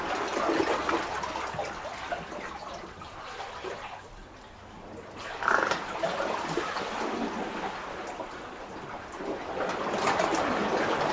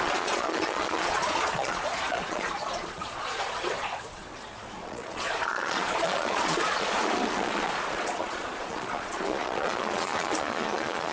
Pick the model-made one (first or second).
second